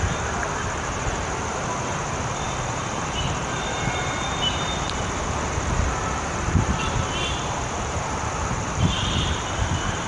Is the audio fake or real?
fake